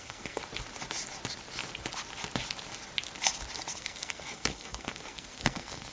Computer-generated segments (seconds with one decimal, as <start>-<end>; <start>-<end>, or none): 0.0-0.4; 3.7-5.9